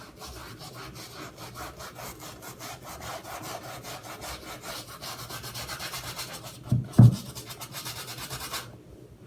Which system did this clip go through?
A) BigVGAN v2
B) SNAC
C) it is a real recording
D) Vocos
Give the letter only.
C